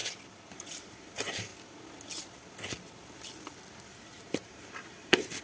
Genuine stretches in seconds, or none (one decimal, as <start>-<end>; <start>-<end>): 0.0-0.5; 1.5-3.9